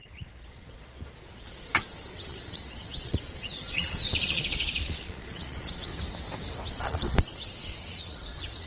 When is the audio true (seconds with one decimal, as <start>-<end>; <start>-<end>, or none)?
5.9-6.7